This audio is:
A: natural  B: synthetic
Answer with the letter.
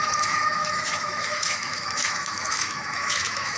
B